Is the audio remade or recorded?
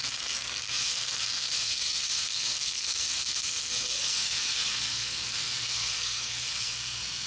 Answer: remade